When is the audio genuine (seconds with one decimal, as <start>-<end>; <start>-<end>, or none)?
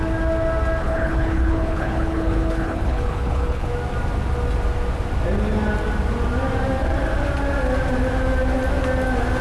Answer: 0.0-0.8; 3.7-9.4